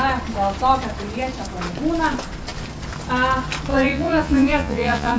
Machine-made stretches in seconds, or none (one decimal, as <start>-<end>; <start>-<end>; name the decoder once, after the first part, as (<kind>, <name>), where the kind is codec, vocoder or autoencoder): 3.7-5.2 (vocoder, Vocos)